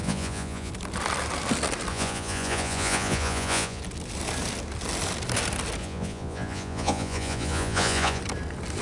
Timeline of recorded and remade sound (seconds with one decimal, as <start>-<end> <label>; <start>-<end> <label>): 0.0-0.7 remade; 0.7-1.9 recorded; 1.9-3.8 remade; 3.8-5.8 recorded; 5.8-8.2 remade; 8.2-8.8 recorded